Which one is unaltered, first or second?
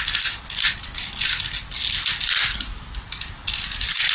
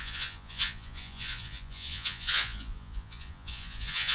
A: first